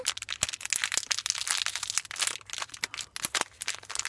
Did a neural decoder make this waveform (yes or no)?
no